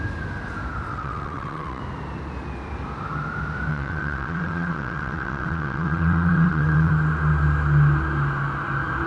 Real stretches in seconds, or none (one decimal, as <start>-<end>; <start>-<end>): 0.0-0.9; 1.8-3.7; 6.9-9.1